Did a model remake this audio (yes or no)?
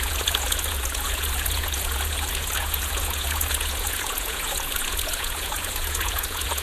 yes